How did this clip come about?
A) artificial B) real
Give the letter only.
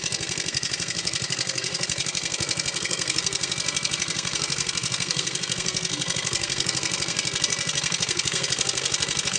A